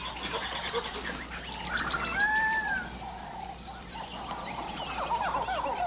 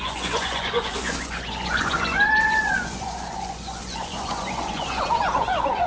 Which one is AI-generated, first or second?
second